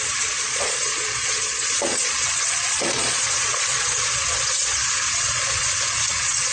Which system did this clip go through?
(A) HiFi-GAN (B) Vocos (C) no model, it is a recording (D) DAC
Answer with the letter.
B